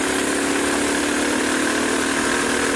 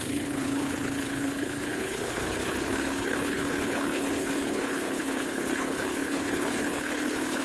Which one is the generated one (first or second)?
second